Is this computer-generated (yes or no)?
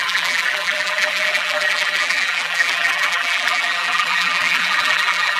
yes